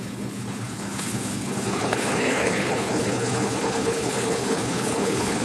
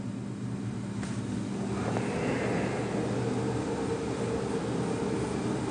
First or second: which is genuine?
second